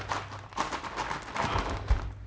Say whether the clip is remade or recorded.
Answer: recorded